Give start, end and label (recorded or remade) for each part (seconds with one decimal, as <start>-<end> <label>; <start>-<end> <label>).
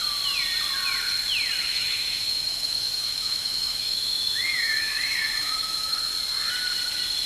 0.0-1.7 recorded; 1.7-6.1 remade; 6.1-7.3 recorded